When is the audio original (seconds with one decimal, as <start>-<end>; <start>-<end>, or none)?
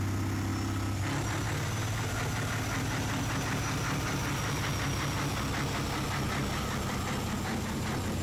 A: 0.0-8.2